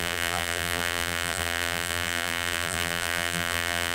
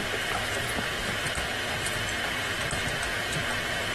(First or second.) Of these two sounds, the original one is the second